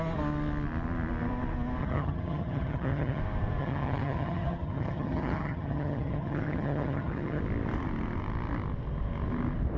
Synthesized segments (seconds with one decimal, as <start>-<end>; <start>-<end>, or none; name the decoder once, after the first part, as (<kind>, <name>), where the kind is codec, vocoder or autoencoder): 1.8-3.2 (vocoder, HiFi-GAN); 3.6-7.4